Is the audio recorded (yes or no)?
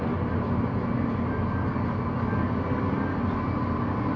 yes